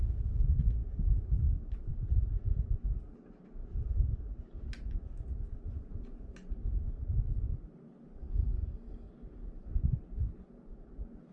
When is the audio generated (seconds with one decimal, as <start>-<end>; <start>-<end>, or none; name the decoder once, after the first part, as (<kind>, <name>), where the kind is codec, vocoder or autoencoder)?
8.2-9.1 (codec, DAC)